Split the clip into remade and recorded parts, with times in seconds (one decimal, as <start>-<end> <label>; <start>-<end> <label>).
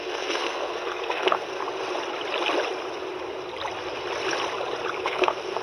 0.0-1.6 remade; 1.6-5.0 recorded; 5.0-5.6 remade